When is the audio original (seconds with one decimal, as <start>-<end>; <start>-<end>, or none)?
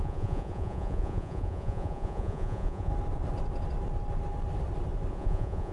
2.9-5.1